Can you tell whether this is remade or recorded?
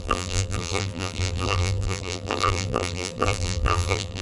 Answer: remade